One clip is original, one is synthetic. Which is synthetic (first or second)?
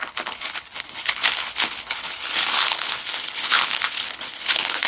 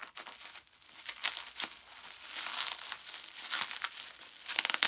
first